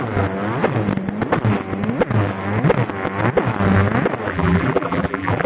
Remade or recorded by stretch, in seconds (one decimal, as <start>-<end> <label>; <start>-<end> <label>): 0.0-4.3 recorded; 4.3-5.5 remade